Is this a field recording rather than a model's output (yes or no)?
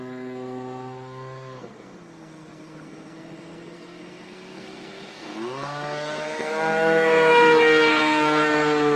no